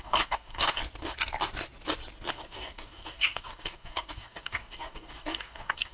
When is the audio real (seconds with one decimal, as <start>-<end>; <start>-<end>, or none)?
0.8-2.3